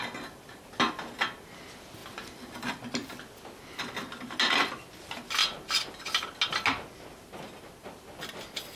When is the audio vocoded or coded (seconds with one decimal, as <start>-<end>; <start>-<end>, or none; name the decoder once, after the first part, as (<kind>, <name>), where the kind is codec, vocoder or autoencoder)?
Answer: none